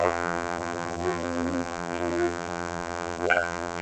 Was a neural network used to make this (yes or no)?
yes